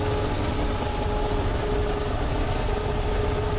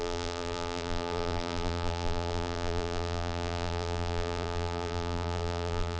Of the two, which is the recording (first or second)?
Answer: first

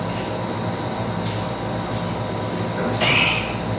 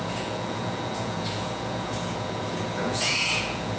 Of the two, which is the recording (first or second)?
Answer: first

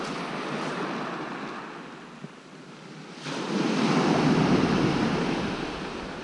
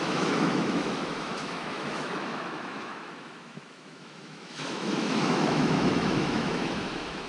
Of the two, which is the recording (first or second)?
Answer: first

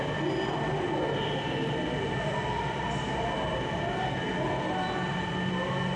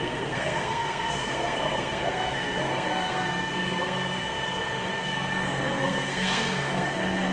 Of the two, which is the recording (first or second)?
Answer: first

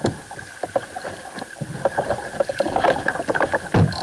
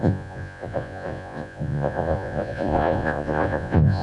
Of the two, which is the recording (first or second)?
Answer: first